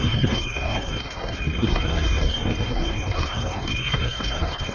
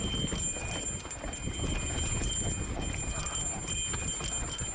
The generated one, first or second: first